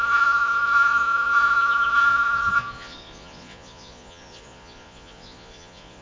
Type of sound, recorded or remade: remade